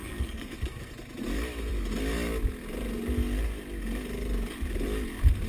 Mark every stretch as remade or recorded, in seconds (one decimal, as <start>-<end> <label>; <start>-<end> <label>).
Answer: 0.0-0.9 remade; 0.9-5.5 recorded